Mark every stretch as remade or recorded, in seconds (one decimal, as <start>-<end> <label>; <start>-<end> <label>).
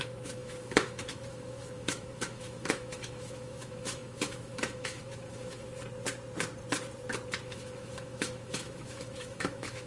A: 0.0-5.7 remade; 5.7-7.4 recorded; 7.4-9.9 remade